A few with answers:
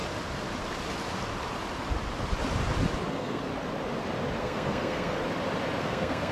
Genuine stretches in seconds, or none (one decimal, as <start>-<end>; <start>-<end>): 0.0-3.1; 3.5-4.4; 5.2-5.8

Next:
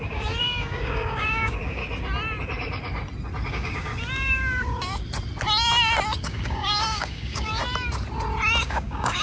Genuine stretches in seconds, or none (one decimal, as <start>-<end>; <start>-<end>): 1.8-3.5; 3.9-6.2; 7.6-8.6

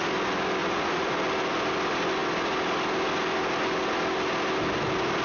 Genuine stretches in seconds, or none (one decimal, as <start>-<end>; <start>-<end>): 0.0-0.6; 1.1-5.2